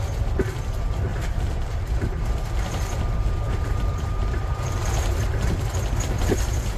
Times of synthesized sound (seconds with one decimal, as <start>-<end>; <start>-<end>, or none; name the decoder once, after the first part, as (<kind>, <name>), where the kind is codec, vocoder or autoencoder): 1.1-5.2 (vocoder, BigVGAN v2)

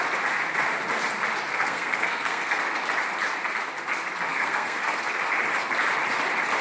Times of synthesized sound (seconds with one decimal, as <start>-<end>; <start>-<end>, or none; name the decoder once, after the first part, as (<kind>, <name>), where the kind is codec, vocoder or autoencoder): 1.5-2.6 (codec, SNAC); 4.3-4.9

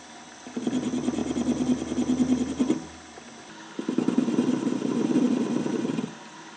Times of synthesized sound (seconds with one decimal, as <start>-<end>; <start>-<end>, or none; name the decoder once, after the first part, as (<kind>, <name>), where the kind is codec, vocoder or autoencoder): none

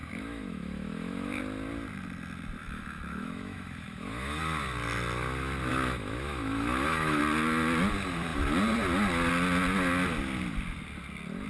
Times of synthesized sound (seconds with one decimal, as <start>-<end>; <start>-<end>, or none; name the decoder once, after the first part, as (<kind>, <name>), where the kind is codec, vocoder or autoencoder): 0.0-1.4 (autoencoder, DAC-VAE); 2.6-4.4; 5.7-7.2

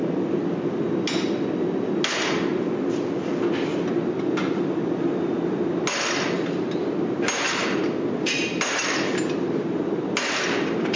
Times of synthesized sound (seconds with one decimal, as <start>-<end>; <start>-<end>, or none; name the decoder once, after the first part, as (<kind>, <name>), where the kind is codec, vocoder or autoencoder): none

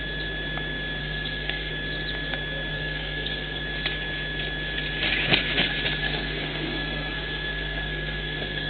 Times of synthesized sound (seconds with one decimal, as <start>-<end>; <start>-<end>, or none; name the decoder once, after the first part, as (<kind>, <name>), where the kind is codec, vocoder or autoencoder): 1.0-1.7 (codec, SNAC); 2.7-3.6; 6.0-8.7